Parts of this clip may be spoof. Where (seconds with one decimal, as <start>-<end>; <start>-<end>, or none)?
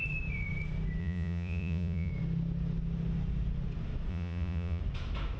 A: 1.0-2.1; 4.1-4.8